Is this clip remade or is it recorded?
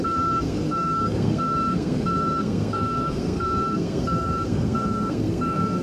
remade